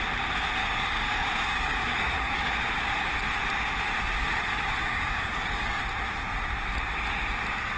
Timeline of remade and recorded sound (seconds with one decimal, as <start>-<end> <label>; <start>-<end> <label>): 0.0-0.6 recorded; 0.6-2.6 remade; 2.6-4.8 recorded; 4.8-5.8 remade; 5.8-7.8 recorded